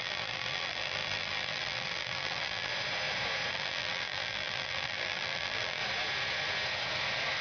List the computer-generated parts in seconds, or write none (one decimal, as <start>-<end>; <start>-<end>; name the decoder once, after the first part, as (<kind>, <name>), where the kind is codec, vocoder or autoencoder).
0.0-2.7 (vocoder, BigVGAN v2); 3.5-5.8